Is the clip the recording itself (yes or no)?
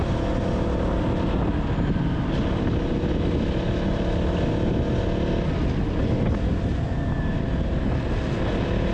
yes